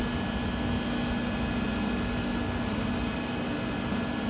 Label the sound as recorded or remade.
recorded